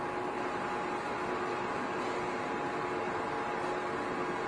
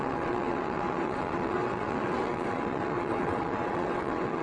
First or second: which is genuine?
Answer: first